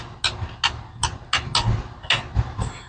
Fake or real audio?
real